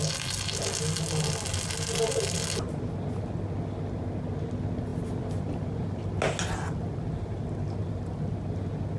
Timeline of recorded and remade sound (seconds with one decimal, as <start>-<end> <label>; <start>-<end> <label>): 0.0-4.9 recorded; 4.9-6.0 remade; 6.0-9.0 recorded